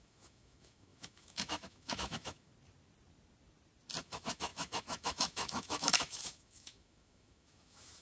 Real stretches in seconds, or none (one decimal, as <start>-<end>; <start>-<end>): 2.5-4.0